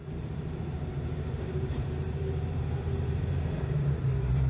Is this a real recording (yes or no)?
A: no